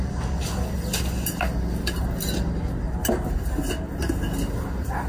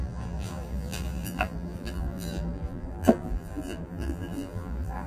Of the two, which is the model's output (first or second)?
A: second